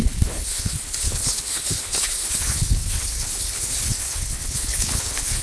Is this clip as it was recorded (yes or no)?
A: no